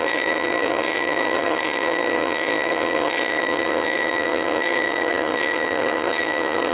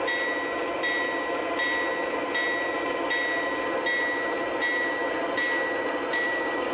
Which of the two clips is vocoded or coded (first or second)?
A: first